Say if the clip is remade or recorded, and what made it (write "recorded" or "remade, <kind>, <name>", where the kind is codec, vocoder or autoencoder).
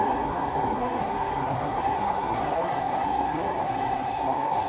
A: remade, codec, SNAC